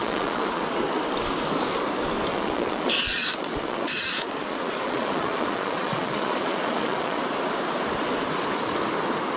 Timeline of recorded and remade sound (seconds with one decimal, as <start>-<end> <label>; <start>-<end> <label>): 0.0-0.6 remade; 0.6-2.3 recorded; 2.3-7.2 remade; 7.2-9.4 recorded